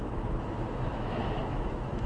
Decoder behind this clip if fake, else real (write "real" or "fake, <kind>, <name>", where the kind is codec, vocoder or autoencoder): fake, autoencoder, DAC-VAE